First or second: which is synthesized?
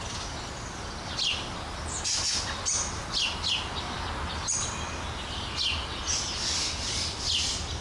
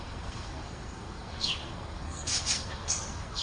second